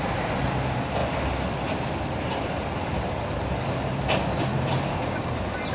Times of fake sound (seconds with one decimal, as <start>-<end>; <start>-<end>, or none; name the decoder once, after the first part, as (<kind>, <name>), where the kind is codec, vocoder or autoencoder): none